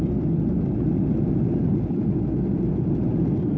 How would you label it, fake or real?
fake